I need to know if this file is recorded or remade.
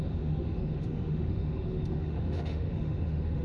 remade